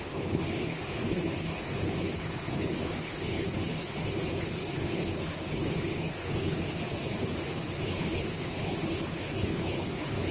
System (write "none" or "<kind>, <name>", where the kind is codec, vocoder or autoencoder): codec, HILCodec